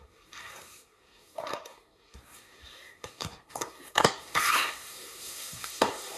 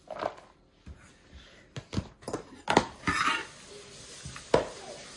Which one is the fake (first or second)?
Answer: first